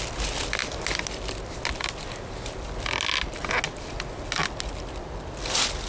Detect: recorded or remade recorded